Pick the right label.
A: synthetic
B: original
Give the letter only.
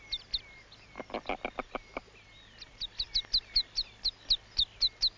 B